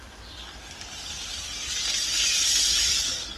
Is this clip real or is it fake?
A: real